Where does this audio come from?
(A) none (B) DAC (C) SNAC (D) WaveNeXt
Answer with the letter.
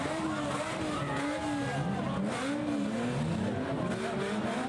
A